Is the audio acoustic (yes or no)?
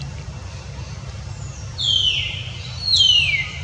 yes